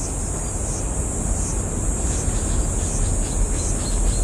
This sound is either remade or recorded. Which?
recorded